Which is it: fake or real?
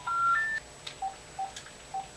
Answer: real